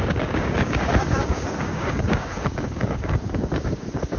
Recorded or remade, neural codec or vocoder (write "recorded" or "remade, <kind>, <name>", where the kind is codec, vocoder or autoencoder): remade, codec, DAC